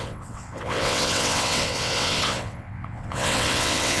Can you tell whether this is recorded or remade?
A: remade